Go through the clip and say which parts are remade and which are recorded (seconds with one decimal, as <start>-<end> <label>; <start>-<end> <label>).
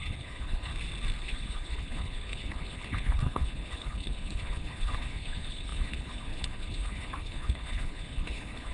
0.0-0.7 remade; 0.7-1.2 recorded; 1.2-8.7 remade